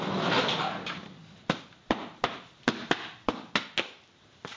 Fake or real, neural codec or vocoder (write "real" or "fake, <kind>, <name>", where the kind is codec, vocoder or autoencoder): real